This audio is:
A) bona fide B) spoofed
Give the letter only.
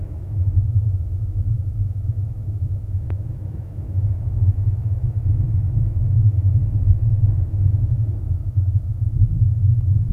B